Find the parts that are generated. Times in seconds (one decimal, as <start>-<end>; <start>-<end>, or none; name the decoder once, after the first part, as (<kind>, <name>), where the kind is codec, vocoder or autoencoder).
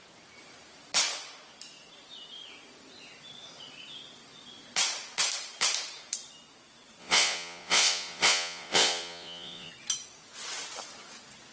7.0-9.7 (vocoder, Vocos)